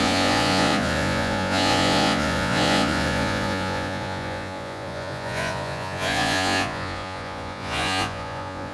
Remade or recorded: remade